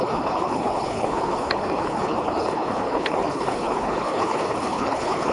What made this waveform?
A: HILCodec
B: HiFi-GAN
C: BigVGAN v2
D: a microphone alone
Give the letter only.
A